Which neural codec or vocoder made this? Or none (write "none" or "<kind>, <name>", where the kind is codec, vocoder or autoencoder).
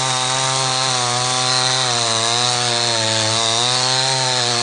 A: none